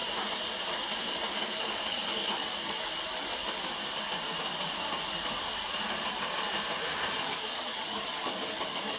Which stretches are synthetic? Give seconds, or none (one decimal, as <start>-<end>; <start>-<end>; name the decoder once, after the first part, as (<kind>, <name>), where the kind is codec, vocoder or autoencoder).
1.4-2.5 (codec, DAC); 7.2-9.0